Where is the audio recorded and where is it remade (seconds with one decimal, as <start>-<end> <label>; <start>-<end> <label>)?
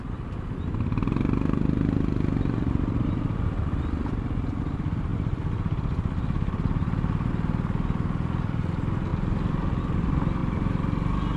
0.0-5.1 recorded; 5.1-7.3 remade; 7.3-11.4 recorded